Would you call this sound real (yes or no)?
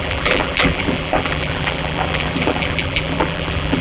no